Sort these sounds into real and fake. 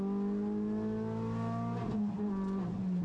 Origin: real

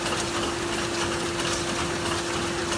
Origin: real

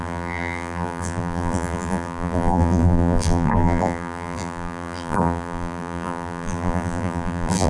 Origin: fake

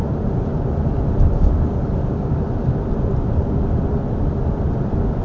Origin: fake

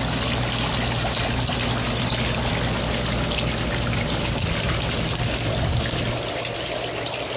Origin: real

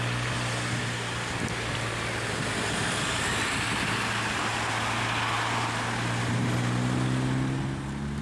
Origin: real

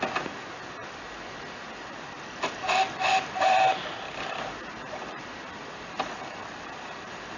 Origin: real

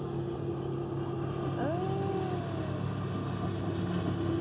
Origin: real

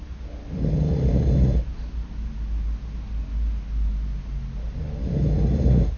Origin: real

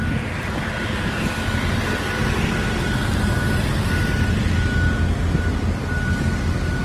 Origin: real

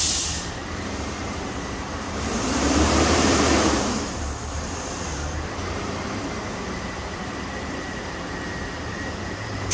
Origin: fake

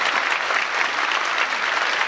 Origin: real